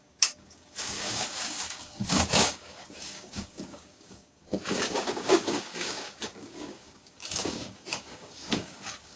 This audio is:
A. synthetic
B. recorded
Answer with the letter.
A